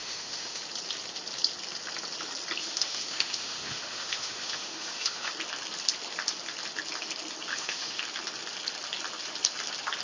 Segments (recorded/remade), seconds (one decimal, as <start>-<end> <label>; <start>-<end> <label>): 0.0-0.6 remade; 0.6-2.6 recorded; 2.6-5.3 remade; 5.3-7.5 recorded; 7.5-8.0 remade; 8.0-10.0 recorded